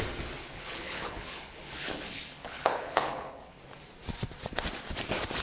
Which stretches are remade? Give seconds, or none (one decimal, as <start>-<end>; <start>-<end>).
0.4-3.6